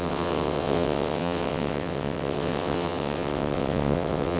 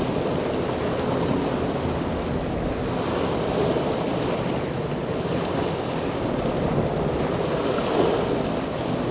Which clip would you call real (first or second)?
second